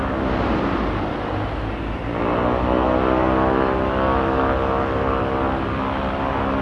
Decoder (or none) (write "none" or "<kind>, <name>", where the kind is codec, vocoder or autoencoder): none